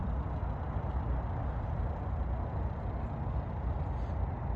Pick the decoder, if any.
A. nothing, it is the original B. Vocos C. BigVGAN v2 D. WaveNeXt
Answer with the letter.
A